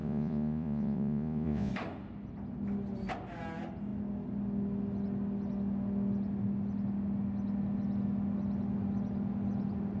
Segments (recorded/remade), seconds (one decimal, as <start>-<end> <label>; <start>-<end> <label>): 0.0-1.7 remade; 1.7-10.0 recorded